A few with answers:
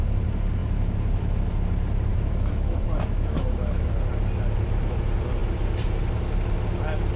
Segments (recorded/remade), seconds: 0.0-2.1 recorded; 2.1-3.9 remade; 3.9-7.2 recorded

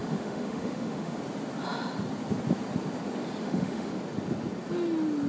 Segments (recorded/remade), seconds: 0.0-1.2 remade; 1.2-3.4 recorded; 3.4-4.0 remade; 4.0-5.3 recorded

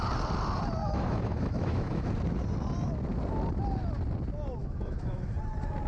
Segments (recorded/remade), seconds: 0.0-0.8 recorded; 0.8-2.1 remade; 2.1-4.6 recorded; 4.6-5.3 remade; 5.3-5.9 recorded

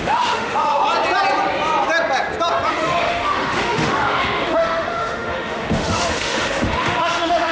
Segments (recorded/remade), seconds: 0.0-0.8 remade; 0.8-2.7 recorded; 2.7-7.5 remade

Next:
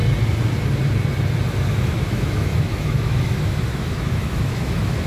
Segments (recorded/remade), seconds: 0.0-1.7 recorded; 1.7-5.1 remade